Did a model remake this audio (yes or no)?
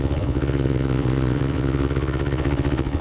yes